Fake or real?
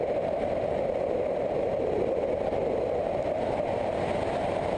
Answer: real